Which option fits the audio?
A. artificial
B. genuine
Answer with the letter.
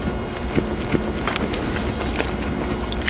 B